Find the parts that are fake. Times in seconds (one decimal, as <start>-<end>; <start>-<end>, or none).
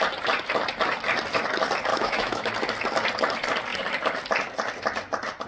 1.9-2.5